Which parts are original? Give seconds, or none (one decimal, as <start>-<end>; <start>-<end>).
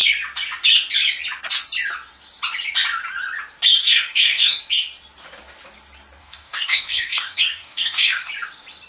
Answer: 0.0-3.8; 4.6-6.2; 8.3-8.9